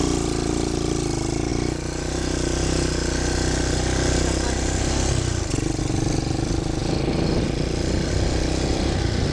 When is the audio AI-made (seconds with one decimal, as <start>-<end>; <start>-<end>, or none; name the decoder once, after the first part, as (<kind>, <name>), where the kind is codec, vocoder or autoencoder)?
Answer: none